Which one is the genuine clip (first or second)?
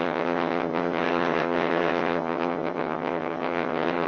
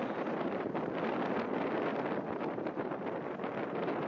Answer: second